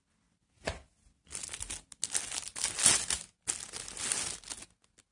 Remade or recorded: recorded